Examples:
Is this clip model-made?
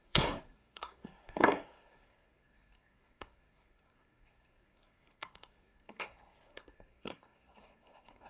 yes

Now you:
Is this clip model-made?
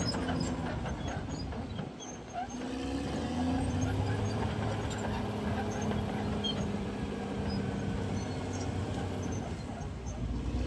no